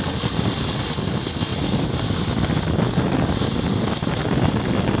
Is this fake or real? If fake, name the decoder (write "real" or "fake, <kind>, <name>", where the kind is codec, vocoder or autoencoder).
real